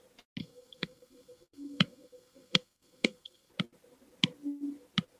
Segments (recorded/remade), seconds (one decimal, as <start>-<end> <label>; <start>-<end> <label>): 0.0-0.4 recorded; 0.4-3.5 remade; 3.5-5.2 recorded